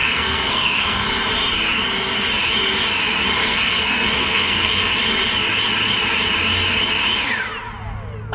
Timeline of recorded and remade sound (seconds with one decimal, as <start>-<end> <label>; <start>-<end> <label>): 0.0-1.1 remade; 1.1-3.4 recorded; 3.4-4.9 remade; 4.9-8.3 recorded